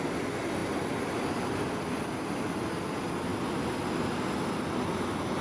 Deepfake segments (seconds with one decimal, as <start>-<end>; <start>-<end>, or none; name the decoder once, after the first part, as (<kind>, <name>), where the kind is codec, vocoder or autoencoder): none